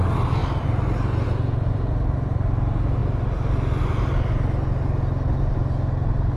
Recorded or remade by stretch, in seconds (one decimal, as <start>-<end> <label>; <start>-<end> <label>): 0.0-0.4 recorded; 0.4-1.9 remade; 1.9-6.4 recorded